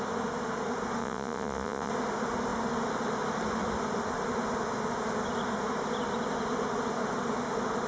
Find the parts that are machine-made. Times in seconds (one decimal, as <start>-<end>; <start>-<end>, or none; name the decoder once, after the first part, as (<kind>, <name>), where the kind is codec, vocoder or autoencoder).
1.0-1.9 (vocoder, Vocos)